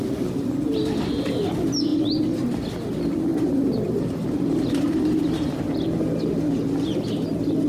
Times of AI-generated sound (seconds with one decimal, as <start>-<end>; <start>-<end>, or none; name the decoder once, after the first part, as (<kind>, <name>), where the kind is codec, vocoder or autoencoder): 3.3-5.6 (vocoder, BigVGAN v2)